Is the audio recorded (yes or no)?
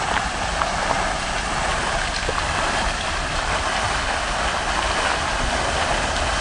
yes